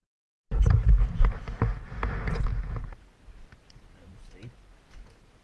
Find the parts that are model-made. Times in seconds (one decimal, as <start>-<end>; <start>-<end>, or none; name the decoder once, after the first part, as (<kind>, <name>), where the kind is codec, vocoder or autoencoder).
none